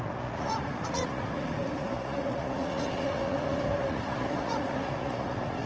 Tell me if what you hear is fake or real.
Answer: fake